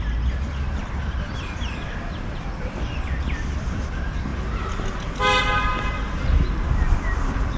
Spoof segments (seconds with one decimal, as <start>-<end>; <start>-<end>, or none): none

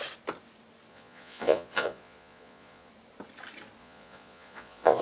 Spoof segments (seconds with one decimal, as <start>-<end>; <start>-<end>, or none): 0.9-2.9; 3.8-5.0

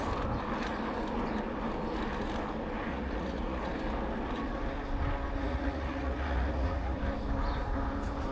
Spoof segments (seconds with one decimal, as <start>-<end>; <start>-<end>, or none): 2.9-3.7; 5.4-7.0

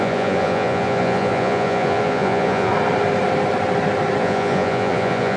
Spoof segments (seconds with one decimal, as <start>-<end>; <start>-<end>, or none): 0.0-2.7; 4.2-5.4

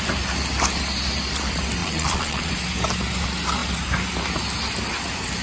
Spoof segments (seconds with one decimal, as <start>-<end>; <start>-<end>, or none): 1.8-2.5

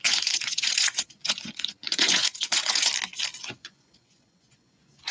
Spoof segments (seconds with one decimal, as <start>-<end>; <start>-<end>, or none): 0.0-2.9; 3.4-5.1